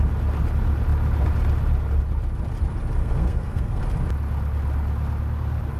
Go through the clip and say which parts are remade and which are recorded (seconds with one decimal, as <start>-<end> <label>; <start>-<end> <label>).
0.0-3.0 recorded; 3.0-3.8 remade; 3.8-5.8 recorded